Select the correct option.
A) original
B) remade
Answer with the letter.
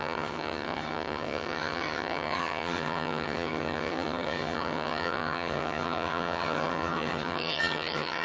B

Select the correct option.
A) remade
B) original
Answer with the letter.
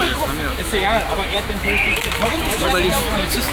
A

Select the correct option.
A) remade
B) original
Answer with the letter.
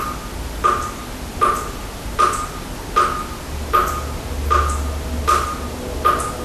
B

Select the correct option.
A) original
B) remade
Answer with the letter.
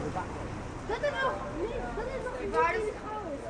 A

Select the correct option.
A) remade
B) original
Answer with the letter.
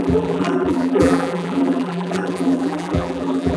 A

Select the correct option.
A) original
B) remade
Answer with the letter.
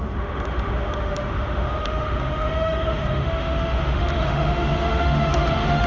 B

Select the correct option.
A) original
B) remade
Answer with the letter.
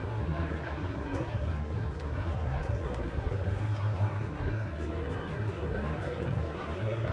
B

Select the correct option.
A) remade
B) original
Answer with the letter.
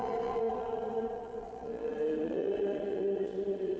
A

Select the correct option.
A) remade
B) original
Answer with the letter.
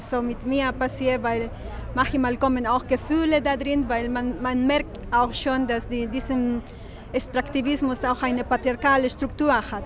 B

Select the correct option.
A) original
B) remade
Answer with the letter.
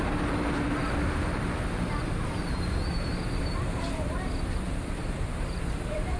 B